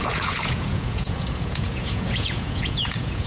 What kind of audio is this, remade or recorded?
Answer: remade